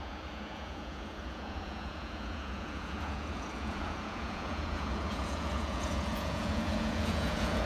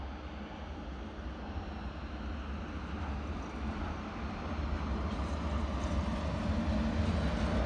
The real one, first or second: second